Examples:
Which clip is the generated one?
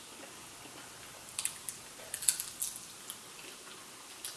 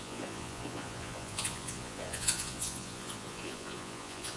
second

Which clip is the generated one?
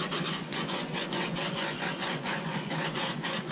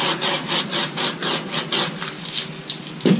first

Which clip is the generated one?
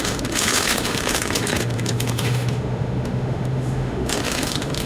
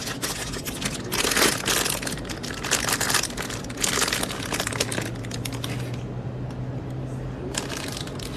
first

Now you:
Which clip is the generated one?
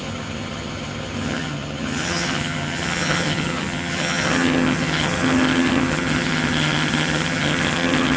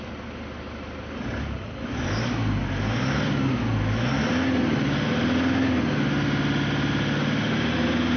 first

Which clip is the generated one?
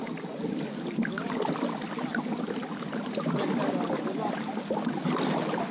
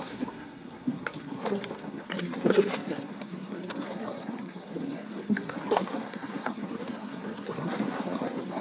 second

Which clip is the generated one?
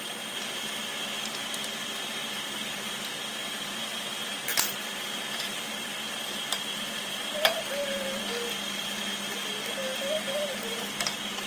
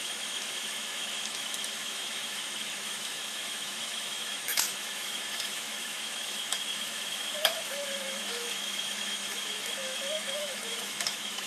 second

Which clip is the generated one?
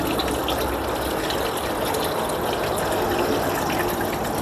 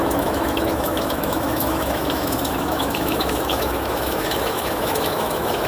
second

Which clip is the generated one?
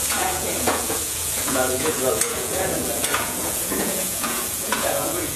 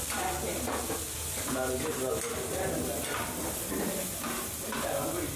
first